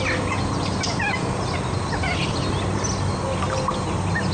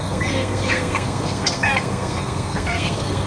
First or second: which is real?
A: first